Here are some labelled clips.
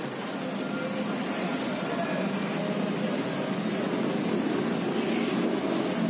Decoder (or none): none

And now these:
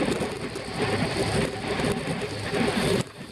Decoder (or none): none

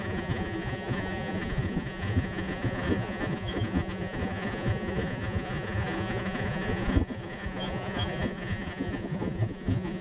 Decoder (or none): vocoder, Vocos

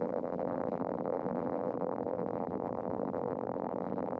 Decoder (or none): vocoder, BigVGAN v2